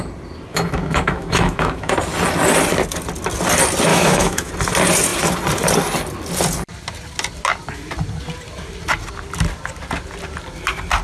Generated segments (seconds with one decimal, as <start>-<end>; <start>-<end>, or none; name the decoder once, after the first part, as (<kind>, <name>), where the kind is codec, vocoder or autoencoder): 0.5-1.9 (autoencoder, DAC-VAE); 3.9-4.5